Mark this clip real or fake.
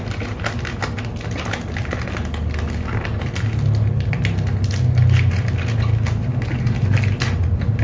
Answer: real